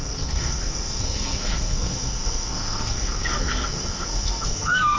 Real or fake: fake